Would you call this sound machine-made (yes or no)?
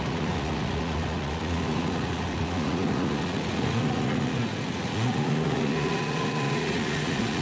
yes